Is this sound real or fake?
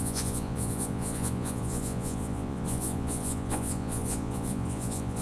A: fake